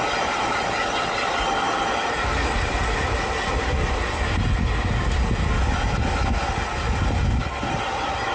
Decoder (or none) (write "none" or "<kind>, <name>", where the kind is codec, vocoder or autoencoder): none